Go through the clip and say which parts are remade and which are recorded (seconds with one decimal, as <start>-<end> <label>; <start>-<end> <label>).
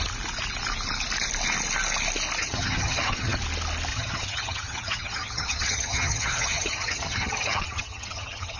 0.0-2.4 recorded; 2.4-3.4 remade; 3.4-3.9 recorded; 3.9-8.6 remade